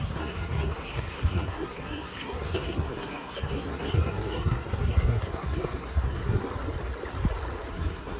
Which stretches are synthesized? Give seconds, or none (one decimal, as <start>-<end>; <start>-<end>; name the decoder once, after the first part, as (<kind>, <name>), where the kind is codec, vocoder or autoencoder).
0.0-6.5 (codec, SNAC); 7.7-8.2